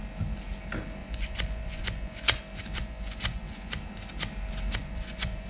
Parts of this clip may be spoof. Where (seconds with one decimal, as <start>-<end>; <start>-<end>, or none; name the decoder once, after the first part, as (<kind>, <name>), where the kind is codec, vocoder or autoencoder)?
1.0-2.4 (vocoder, Vocos); 2.8-3.8; 4.8-5.5